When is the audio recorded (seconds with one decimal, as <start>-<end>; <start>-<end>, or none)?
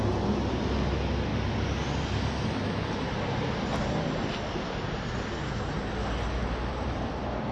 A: 0.0-7.5